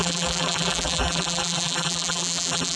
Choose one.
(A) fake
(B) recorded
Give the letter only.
A